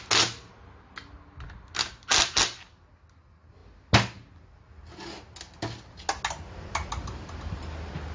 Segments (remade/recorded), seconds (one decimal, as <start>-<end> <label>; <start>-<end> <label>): 0.0-8.1 recorded